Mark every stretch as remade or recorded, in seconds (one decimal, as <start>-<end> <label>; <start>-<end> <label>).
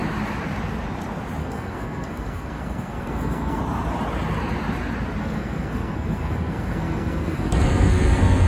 0.0-1.4 recorded; 1.4-3.6 remade; 3.6-5.2 recorded; 5.2-8.5 remade